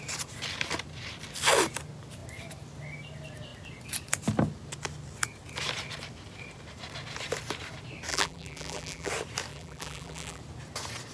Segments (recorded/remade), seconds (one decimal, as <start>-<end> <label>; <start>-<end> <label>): 0.0-8.1 recorded; 8.1-9.1 remade; 9.1-9.5 recorded; 9.5-10.4 remade; 10.4-11.1 recorded